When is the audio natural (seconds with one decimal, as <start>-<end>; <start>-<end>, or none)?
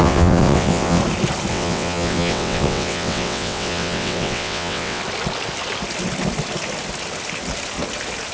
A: 1.0-1.5; 5.0-8.3